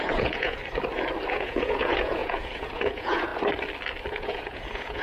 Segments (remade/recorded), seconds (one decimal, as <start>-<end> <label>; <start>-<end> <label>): 0.0-0.6 remade; 0.6-1.3 recorded; 1.3-3.3 remade; 3.3-4.1 recorded; 4.1-5.0 remade